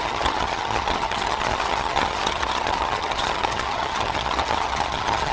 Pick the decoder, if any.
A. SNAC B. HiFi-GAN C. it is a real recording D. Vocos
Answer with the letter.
B